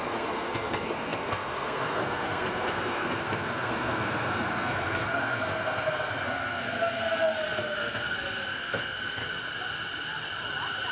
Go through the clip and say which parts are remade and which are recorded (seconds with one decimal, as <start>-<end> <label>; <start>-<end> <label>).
0.0-9.2 remade; 9.2-10.9 recorded